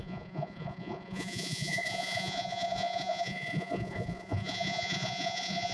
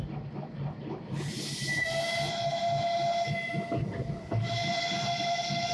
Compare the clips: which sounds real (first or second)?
second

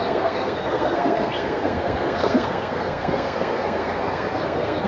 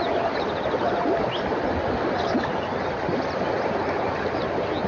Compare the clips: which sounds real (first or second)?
second